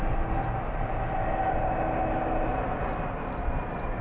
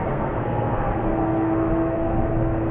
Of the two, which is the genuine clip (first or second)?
first